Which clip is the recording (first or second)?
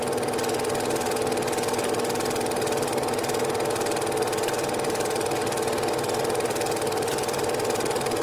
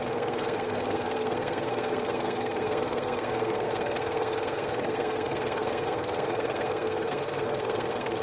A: first